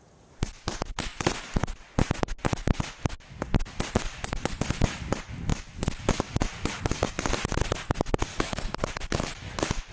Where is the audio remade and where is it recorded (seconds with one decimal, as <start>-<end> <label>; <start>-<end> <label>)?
0.0-8.3 recorded; 8.3-8.9 remade; 8.9-9.9 recorded